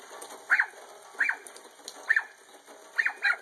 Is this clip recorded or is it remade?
recorded